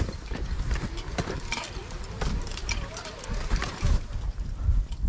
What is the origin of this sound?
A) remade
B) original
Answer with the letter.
B